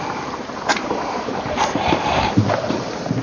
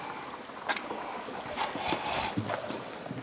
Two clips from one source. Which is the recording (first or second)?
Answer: second